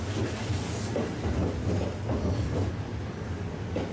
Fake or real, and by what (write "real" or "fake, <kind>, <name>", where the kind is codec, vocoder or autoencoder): real